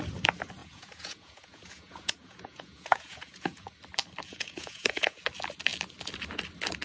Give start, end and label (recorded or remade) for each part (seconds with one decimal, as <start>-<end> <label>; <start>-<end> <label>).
0.0-0.6 recorded; 0.6-3.7 remade; 3.7-4.3 recorded; 4.3-5.2 remade; 5.2-6.8 recorded